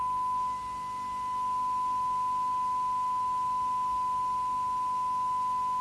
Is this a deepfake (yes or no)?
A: no